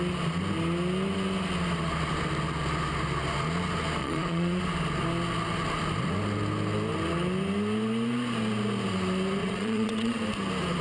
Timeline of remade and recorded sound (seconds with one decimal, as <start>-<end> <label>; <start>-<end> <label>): 0.0-4.0 recorded; 4.0-4.6 remade; 4.6-9.4 recorded; 9.4-10.2 remade; 10.2-10.8 recorded